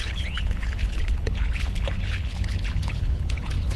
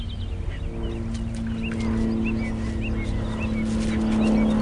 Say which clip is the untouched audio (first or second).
second